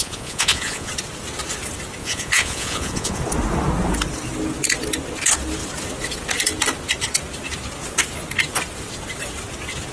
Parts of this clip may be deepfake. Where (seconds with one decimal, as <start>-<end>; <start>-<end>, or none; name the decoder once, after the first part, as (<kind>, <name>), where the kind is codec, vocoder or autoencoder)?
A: 0.0-0.9 (vocoder, Vocos); 2.0-3.2